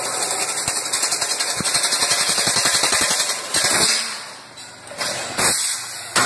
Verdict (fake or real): real